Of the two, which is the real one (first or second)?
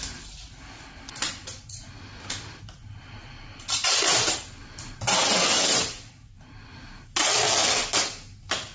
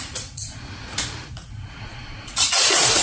first